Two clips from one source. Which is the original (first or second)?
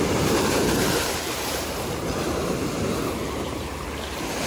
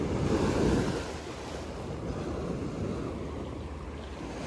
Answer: second